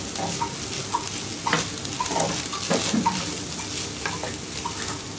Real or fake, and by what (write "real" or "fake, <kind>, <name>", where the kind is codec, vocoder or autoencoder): real